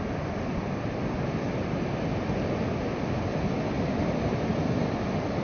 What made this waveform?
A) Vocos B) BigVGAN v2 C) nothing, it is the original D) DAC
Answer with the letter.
C